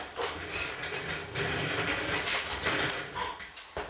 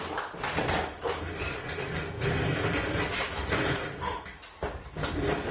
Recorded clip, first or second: second